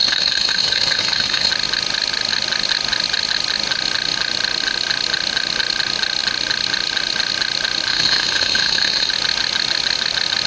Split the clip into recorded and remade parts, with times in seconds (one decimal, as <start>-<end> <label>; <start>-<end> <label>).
0.0-1.5 remade; 1.5-7.9 recorded; 7.9-9.1 remade; 9.1-10.5 recorded